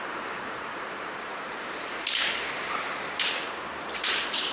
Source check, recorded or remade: remade